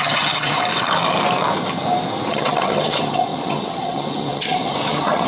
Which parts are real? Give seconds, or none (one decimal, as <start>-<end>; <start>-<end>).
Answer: 0.6-2.3